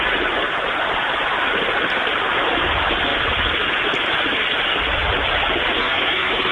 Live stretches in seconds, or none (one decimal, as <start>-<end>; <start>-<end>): 0.0-5.8